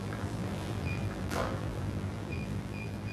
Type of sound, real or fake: fake